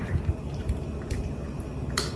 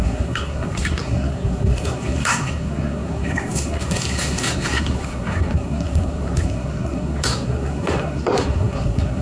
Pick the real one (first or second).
first